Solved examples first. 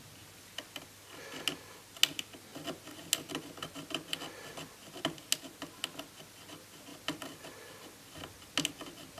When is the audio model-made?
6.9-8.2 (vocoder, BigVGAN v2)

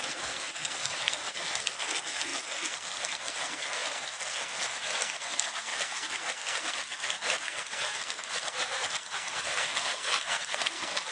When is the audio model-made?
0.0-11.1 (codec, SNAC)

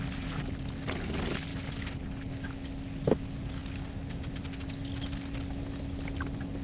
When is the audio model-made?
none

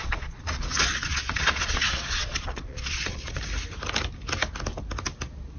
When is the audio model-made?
0.0-3.4 (vocoder, Vocos)